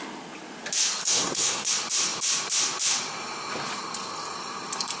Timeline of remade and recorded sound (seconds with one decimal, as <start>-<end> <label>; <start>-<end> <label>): 0.0-1.0 recorded; 1.0-1.7 remade; 1.7-5.0 recorded